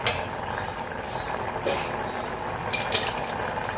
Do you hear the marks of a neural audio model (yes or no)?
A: no